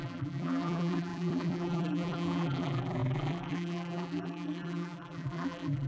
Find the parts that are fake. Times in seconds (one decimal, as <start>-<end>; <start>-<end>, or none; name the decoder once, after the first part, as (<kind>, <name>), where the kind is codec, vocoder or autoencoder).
0.0-5.9 (vocoder, BigVGAN v2)